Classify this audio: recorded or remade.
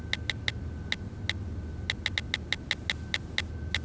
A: recorded